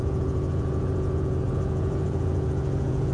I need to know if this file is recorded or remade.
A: remade